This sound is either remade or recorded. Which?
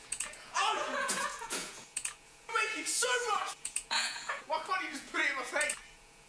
remade